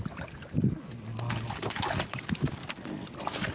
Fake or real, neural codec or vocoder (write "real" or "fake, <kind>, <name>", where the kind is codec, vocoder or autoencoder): real